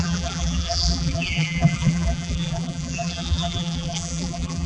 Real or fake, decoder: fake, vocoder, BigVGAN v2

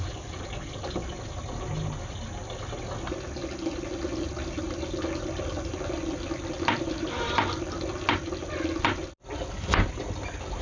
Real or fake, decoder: real